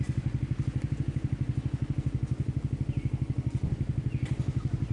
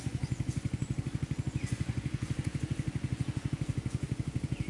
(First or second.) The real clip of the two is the first